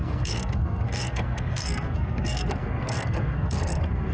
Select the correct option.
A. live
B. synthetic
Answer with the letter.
B